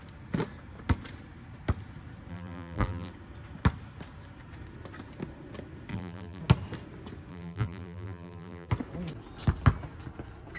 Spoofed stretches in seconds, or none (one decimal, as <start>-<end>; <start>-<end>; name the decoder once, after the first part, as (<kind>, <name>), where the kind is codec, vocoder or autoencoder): 2.3-3.1 (vocoder, BigVGAN v2); 5.9-6.4; 7.3-8.7

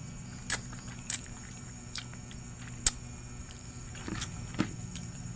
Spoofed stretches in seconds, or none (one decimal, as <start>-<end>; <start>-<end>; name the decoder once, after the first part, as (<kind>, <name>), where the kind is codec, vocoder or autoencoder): 0.6-2.0 (vocoder, BigVGAN v2); 3.4-4.0; 4.6-5.4

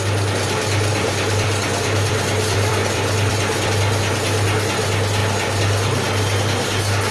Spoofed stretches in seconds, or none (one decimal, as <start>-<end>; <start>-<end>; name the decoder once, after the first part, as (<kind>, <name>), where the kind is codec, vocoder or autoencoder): 0.9-3.8 (vocoder, BigVGAN v2); 5.2-7.1

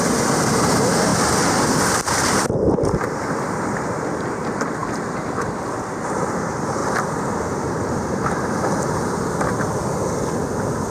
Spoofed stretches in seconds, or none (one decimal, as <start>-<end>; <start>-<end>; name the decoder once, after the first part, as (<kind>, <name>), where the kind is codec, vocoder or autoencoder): 0.0-1.1 (vocoder, BigVGAN v2); 1.6-6.8; 7.8-10.9

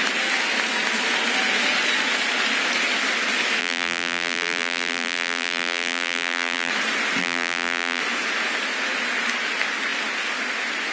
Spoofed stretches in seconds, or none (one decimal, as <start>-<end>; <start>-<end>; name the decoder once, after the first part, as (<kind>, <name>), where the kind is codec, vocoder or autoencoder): 3.6-6.7 (vocoder, BigVGAN v2); 7.2-8.0